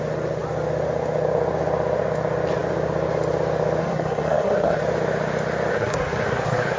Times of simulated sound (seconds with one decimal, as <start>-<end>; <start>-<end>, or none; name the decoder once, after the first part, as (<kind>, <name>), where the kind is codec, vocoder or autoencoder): 3.8-4.8 (codec, SNAC); 5.7-6.8